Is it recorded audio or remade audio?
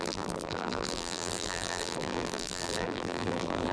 remade